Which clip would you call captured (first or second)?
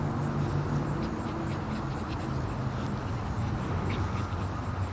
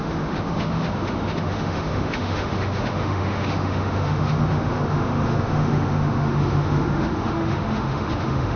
first